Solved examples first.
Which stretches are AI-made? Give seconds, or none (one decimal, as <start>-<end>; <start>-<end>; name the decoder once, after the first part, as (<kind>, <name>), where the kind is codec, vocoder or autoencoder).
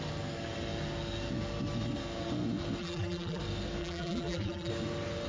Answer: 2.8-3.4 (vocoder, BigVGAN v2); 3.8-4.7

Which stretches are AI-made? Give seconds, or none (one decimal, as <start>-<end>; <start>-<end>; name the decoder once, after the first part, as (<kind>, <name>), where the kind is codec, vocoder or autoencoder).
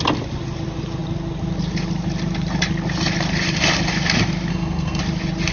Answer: 4.5-5.0 (codec, SNAC)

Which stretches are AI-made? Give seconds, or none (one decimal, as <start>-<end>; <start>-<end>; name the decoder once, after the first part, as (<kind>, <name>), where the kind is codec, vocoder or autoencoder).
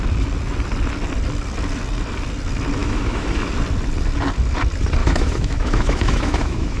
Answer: 2.8-3.5 (autoencoder, DAC-VAE); 5.0-6.8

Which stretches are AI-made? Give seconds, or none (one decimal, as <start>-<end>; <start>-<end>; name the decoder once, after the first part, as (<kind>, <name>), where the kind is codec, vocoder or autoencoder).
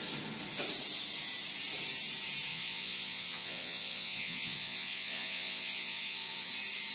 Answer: 2.5-6.5 (vocoder, Vocos)